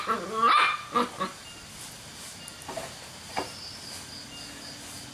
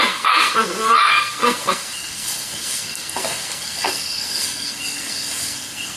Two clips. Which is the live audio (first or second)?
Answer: first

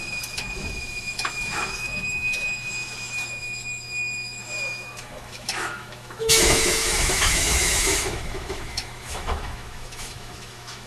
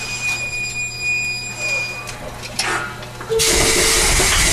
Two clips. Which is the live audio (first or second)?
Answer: second